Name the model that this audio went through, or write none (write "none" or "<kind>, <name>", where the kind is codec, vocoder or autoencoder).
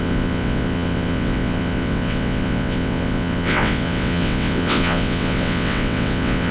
vocoder, WaveNeXt